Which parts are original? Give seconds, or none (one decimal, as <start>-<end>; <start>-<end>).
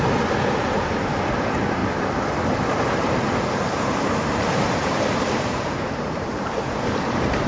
1.8-3.4